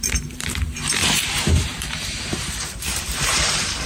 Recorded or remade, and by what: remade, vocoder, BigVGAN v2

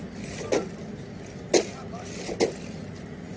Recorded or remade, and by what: recorded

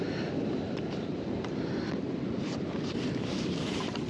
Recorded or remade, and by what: remade, vocoder, BigVGAN v2